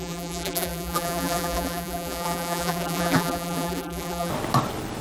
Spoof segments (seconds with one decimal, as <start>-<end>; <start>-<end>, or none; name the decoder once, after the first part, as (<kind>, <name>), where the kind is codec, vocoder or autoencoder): 0.0-4.3 (vocoder, BigVGAN v2)